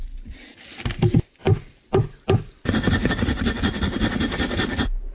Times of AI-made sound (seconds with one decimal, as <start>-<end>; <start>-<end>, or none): none